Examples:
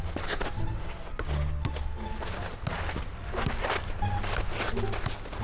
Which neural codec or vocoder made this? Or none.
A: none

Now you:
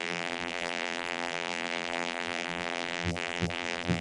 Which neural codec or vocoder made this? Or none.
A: vocoder, BigVGAN v2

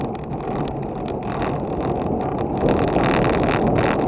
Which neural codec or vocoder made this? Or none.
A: none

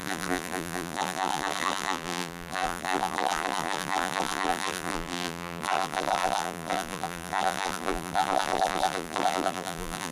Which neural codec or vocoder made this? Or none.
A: vocoder, BigVGAN v2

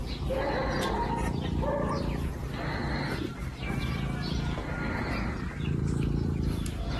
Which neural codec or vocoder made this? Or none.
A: none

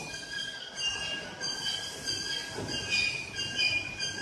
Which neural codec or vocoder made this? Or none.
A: none